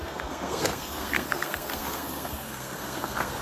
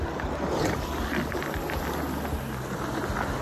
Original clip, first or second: second